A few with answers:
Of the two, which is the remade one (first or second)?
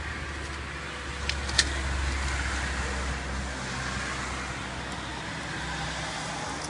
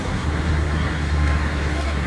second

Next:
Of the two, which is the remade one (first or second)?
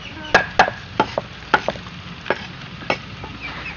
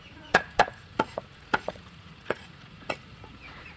second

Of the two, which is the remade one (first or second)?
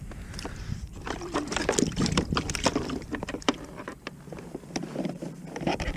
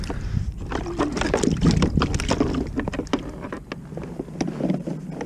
first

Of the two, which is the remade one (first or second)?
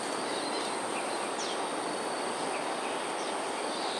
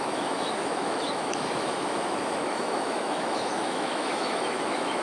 second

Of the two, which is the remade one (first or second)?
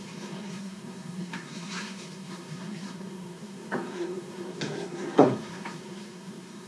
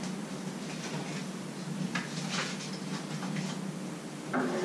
first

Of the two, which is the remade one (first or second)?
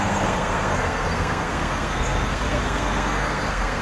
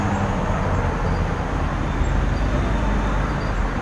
first